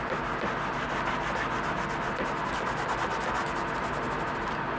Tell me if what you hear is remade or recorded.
recorded